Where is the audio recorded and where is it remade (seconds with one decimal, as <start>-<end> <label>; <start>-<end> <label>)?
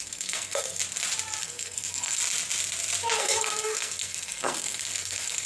0.0-0.8 remade; 0.8-1.4 recorded; 1.4-2.2 remade; 2.2-3.2 recorded; 3.2-5.5 remade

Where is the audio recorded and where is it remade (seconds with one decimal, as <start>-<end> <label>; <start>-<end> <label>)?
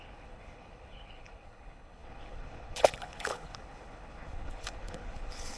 0.0-5.6 remade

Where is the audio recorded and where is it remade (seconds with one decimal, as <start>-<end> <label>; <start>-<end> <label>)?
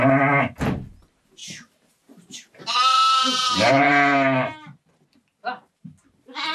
0.0-1.4 recorded; 1.4-4.8 remade; 4.8-6.5 recorded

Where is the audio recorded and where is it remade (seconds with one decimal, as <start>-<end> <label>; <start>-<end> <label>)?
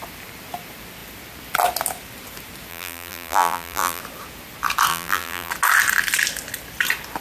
0.0-2.7 recorded; 2.7-4.0 remade; 4.0-4.9 recorded; 4.9-5.5 remade; 5.5-7.2 recorded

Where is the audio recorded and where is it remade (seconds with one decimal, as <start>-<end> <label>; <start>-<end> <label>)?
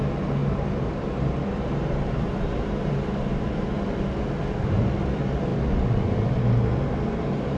0.0-0.4 recorded; 0.4-3.8 remade; 3.8-7.6 recorded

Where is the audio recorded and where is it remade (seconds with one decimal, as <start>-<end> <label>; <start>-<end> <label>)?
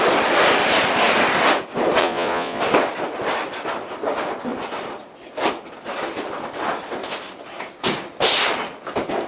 0.0-2.0 recorded; 2.0-2.6 remade; 2.6-9.3 recorded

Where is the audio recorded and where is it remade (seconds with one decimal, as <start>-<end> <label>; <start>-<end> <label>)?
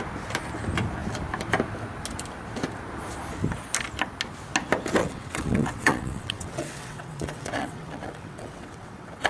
0.0-5.0 recorded; 5.0-9.3 remade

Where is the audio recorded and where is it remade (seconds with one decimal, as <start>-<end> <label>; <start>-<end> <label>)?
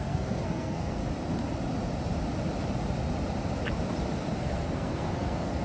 0.0-1.0 remade; 1.0-4.4 recorded; 4.4-5.6 remade